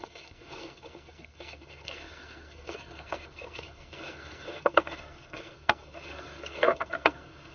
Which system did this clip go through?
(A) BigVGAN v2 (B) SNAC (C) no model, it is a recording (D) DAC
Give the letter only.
B